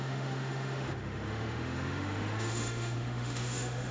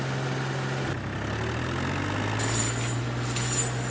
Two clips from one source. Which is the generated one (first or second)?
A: first